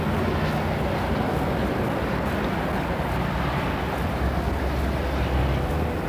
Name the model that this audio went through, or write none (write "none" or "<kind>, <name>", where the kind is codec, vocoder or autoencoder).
none